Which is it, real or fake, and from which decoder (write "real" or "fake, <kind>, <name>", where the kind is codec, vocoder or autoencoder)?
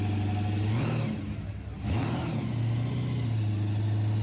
real